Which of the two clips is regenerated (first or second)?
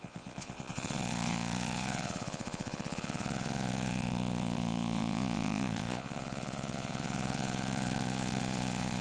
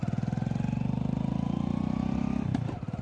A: first